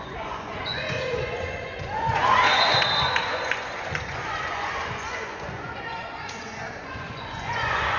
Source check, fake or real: fake